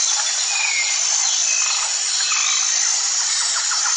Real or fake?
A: real